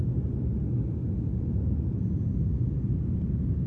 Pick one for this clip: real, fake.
real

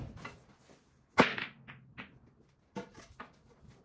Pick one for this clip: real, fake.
real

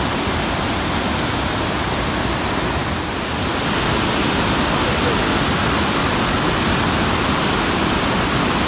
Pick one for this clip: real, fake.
real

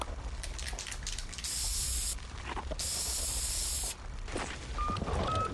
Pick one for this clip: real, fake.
real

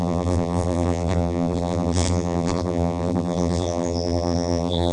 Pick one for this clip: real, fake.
fake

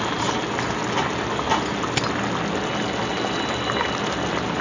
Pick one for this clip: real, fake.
real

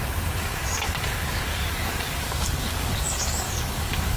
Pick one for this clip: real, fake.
fake